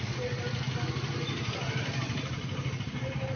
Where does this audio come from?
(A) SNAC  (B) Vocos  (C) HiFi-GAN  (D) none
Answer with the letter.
D